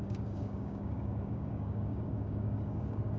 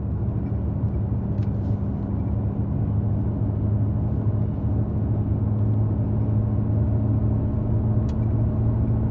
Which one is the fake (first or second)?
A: first